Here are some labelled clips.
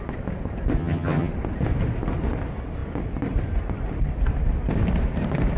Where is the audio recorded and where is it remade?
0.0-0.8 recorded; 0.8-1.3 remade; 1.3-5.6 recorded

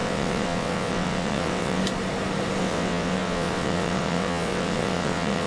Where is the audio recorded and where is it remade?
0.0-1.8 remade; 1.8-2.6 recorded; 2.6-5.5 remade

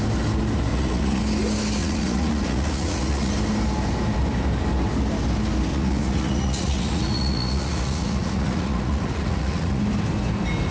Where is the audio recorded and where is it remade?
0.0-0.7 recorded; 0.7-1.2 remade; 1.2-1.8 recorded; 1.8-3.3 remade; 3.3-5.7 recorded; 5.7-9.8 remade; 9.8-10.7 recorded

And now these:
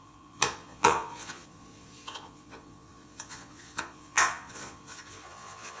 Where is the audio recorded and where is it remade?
0.0-5.8 remade